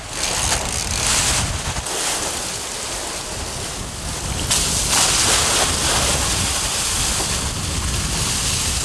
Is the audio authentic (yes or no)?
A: yes